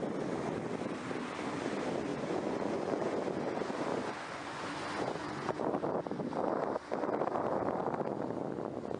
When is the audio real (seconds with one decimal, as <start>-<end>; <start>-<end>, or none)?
0.0-2.1; 3.2-3.9; 5.6-9.0